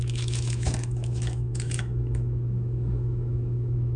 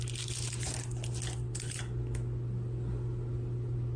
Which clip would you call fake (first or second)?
first